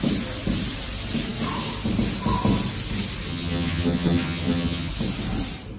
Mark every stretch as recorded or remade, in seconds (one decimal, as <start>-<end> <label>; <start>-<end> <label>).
0.0-3.3 recorded; 3.3-4.9 remade; 4.9-5.8 recorded